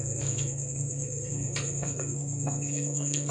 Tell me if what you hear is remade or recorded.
remade